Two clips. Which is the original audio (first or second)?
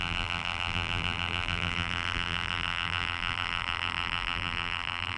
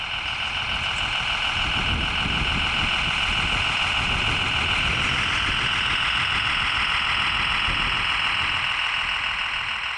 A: second